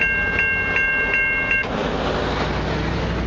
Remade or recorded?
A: recorded